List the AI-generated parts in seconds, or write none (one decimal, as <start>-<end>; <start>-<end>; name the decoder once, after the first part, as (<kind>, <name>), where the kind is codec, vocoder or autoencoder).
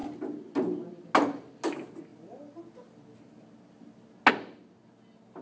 none